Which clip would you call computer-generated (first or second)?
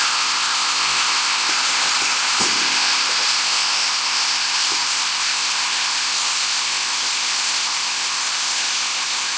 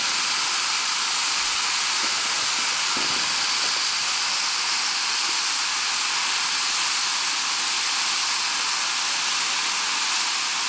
first